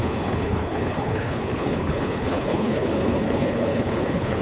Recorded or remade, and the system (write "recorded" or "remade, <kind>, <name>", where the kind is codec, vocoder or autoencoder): remade, codec, HILCodec